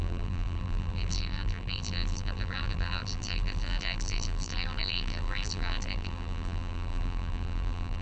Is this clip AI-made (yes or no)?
yes